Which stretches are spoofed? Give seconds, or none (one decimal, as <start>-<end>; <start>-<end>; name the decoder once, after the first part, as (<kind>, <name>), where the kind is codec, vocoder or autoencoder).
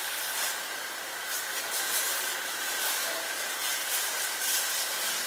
3.7-5.3 (vocoder, BigVGAN v2)